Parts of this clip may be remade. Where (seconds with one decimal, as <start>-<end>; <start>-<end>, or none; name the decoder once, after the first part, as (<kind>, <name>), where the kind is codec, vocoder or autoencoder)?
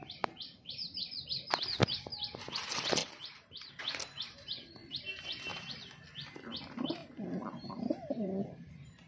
3.0-3.7 (vocoder, BigVGAN v2); 5.5-6.0; 7.0-8.7